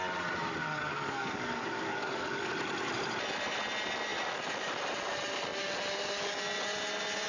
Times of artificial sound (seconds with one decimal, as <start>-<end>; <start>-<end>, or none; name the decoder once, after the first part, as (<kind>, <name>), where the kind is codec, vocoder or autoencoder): 0.7-2.5 (codec, DAC)